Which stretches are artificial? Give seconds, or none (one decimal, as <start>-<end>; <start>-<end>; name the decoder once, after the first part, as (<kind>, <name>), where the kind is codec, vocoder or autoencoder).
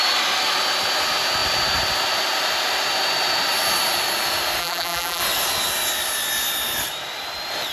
4.6-5.2 (vocoder, BigVGAN v2)